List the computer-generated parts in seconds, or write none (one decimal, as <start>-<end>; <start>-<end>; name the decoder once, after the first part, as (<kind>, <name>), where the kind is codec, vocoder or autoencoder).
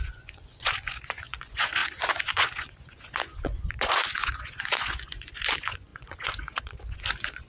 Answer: 0.0-7.5 (vocoder, Vocos)